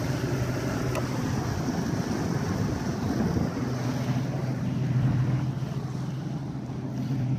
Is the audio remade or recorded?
recorded